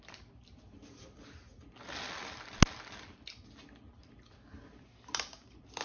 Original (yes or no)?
yes